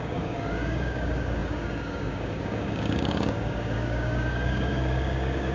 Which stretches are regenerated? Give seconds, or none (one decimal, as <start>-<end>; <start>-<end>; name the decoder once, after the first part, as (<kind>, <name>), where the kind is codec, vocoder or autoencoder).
0.0-5.5 (codec, DAC)